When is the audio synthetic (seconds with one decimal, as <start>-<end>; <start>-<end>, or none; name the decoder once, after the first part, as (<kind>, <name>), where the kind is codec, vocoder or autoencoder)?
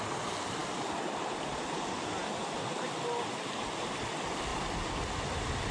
none